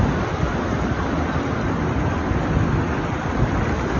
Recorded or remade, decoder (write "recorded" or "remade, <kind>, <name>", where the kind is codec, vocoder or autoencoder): recorded